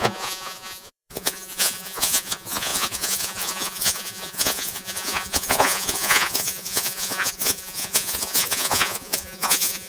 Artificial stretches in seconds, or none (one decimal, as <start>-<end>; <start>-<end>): 0.0-9.9

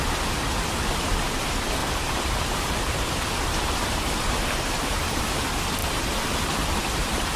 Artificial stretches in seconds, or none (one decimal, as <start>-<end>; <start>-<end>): 1.8-5.2

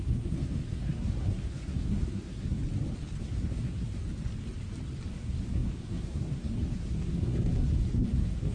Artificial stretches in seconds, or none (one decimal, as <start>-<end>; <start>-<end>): 0.0-2.6; 3.2-4.0; 5.1-8.5

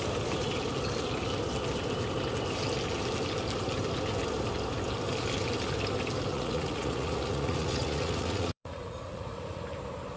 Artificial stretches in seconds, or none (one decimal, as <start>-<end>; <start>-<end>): 6.3-9.6

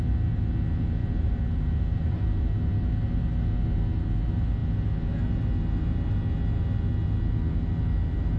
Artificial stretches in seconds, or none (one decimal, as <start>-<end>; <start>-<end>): 1.0-2.5

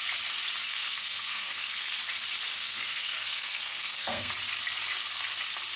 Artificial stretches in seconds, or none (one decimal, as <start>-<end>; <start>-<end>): 0.7-2.0; 2.5-4.3

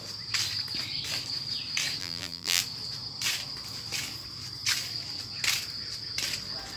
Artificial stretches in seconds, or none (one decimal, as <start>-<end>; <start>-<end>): 2.0-2.6